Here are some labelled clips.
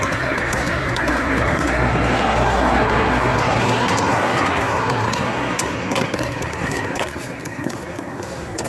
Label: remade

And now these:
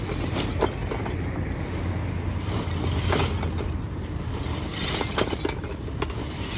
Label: recorded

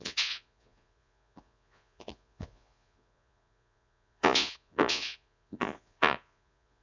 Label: remade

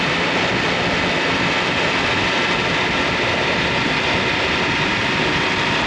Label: recorded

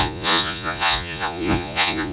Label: remade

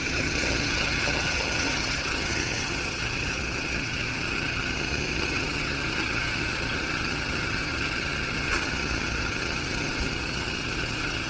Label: remade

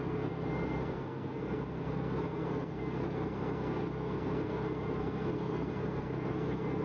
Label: remade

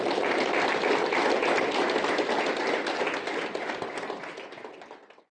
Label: recorded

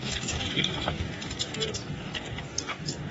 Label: remade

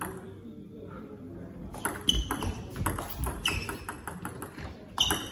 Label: recorded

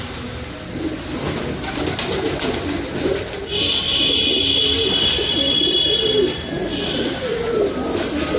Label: recorded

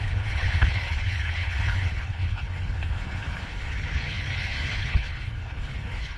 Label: remade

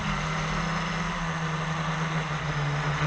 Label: recorded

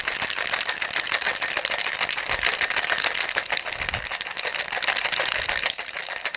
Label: recorded